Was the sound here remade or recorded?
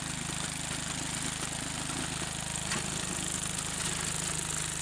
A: recorded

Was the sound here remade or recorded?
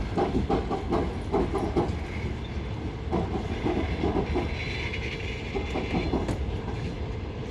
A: recorded